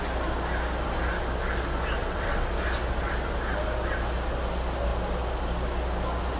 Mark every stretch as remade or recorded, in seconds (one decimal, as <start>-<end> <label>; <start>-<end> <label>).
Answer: 0.0-2.0 recorded; 2.0-2.5 remade; 2.5-6.4 recorded